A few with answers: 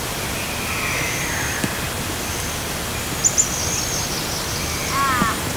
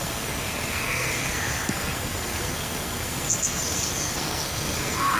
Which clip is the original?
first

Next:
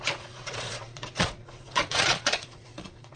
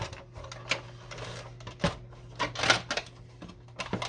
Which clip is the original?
second